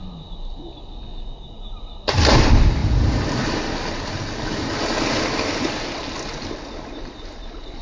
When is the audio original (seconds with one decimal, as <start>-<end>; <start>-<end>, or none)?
0.0-7.8